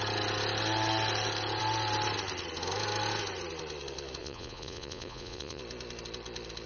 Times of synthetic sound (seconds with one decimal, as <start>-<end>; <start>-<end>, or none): 4.2-5.6